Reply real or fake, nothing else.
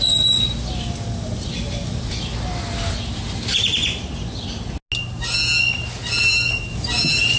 real